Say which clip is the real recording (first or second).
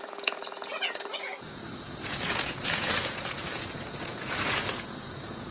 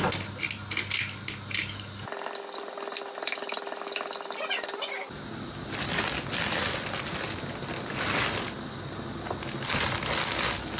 second